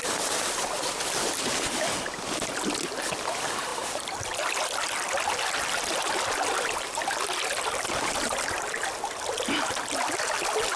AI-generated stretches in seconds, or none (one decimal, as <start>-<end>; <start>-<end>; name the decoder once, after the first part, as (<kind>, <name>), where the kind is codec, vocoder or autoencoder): none